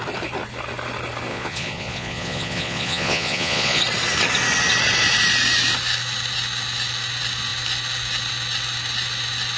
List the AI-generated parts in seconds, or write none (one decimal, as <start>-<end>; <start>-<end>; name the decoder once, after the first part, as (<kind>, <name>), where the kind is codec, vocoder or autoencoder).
1.3-3.8 (vocoder, Vocos)